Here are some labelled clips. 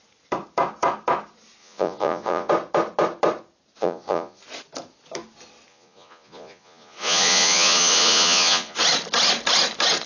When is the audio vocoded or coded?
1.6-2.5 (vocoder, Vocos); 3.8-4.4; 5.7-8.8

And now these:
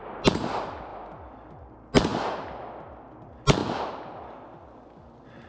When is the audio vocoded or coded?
none

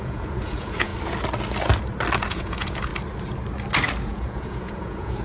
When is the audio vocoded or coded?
0.0-0.9 (vocoder, Vocos); 2.3-2.9; 4.0-5.2

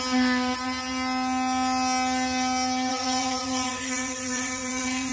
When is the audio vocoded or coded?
2.9-5.1 (vocoder, Vocos)

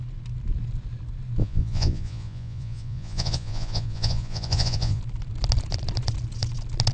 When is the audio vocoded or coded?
1.4-5.0 (vocoder, Vocos)